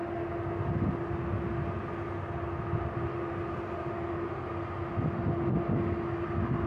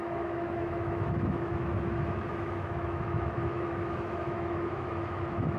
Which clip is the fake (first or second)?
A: second